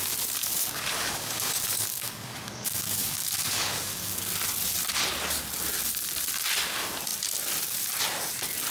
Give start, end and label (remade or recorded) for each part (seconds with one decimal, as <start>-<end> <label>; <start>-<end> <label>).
0.0-0.4 recorded; 0.4-4.3 remade; 4.3-8.7 recorded